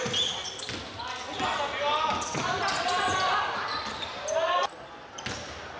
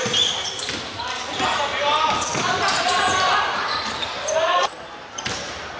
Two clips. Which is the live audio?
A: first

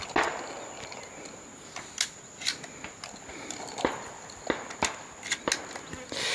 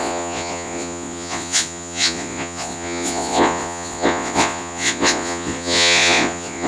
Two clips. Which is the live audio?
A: first